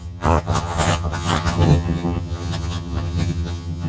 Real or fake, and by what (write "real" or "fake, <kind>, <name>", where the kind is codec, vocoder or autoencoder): fake, vocoder, HiFi-GAN